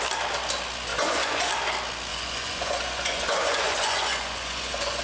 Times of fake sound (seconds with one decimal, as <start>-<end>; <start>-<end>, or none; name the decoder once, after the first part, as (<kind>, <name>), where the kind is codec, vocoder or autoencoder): 0.9-1.5 (vocoder, Vocos); 2.1-5.0